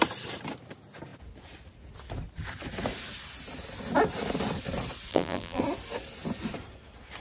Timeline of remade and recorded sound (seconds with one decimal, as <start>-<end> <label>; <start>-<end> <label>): 0.0-5.1 recorded; 5.1-5.6 remade; 5.6-7.2 recorded